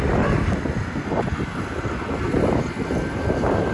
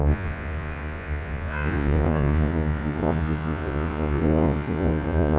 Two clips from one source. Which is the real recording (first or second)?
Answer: first